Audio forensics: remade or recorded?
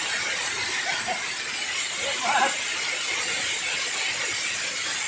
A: recorded